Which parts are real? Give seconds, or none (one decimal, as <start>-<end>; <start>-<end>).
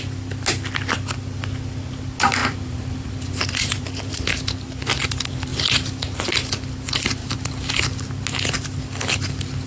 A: 0.0-2.4; 4.3-5.5; 6.2-7.2; 7.8-9.7